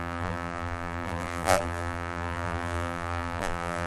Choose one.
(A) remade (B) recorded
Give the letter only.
A